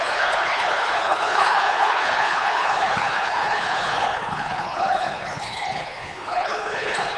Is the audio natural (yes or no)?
no